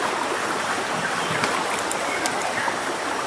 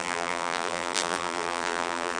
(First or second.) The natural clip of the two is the first